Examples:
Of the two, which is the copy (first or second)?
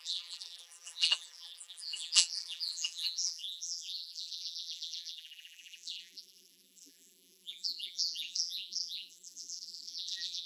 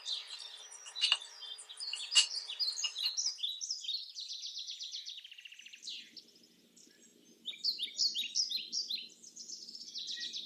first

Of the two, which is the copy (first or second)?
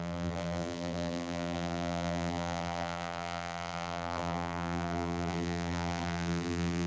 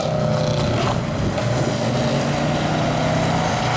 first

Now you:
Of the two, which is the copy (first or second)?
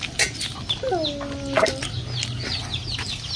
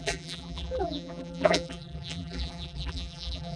second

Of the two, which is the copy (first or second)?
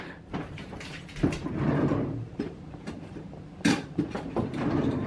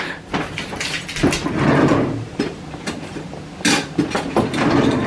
first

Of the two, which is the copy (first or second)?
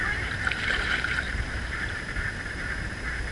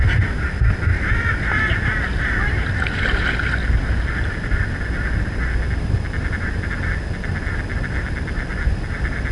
first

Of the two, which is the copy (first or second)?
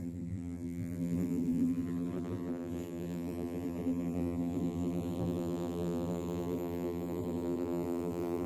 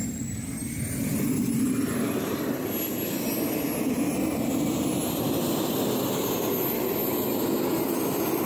first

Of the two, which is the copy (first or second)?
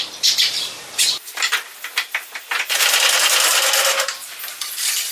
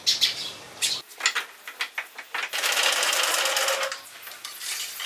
first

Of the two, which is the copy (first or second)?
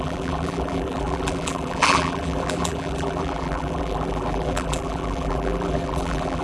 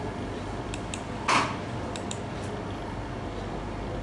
first